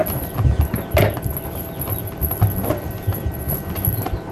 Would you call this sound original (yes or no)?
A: yes